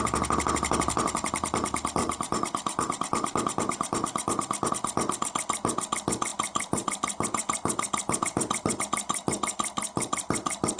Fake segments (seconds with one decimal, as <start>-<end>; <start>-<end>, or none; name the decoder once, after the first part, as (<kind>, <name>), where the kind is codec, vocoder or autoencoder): 2.0-4.7 (vocoder, BigVGAN v2); 6.3-8.8